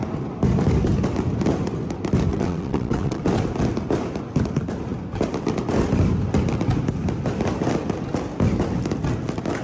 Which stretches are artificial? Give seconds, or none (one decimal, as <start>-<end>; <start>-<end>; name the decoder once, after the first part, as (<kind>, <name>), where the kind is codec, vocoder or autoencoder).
2.3-3.2 (vocoder, WaveNeXt)